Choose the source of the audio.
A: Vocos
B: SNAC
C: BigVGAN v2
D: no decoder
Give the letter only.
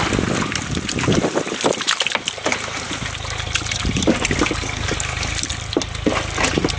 D